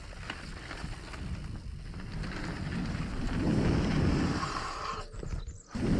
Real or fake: real